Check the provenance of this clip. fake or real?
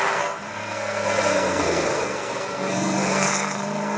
fake